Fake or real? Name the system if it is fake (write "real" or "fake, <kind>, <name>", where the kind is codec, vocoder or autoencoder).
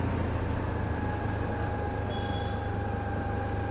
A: real